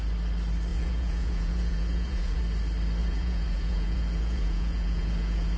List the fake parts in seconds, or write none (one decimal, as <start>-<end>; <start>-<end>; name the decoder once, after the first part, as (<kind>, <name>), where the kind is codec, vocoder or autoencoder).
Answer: 0.7-2.4 (vocoder, Vocos); 3.0-5.6